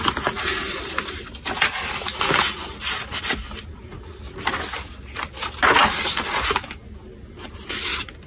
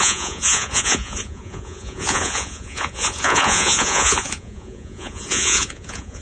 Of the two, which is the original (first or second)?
first